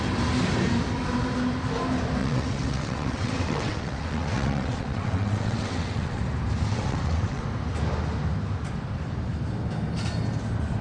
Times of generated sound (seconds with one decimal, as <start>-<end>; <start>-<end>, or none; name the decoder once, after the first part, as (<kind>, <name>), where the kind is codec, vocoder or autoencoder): 2.2-6.2 (vocoder, WaveNeXt); 6.7-7.4